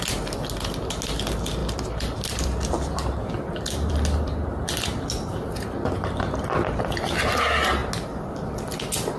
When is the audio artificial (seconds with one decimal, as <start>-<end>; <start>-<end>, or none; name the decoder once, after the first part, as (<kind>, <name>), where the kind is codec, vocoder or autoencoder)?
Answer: 1.6-6.8 (vocoder, BigVGAN v2)